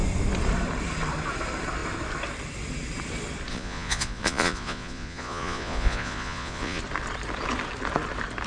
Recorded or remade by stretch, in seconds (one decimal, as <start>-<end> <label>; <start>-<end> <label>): 0.0-3.5 recorded; 3.5-6.8 remade; 6.8-8.5 recorded